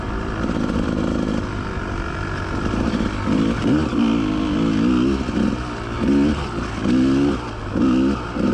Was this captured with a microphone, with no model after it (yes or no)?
yes